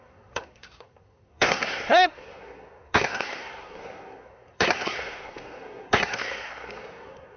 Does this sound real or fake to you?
fake